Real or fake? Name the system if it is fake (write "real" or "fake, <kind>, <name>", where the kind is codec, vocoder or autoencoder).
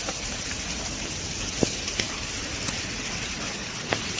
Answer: real